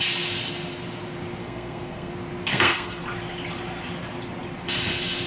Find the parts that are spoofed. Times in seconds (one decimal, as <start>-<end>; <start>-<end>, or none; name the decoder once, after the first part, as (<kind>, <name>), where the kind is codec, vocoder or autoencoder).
1.4-2.1 (codec, SNAC); 2.5-3.0